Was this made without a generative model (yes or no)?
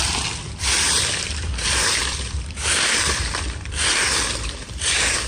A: no